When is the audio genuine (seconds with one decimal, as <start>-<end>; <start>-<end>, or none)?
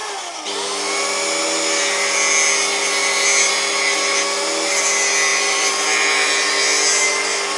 0.0-5.3; 6.5-7.6